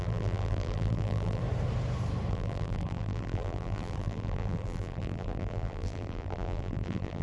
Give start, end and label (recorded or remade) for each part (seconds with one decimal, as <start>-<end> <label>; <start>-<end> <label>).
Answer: 0.0-1.4 remade; 1.4-2.3 recorded; 2.3-7.2 remade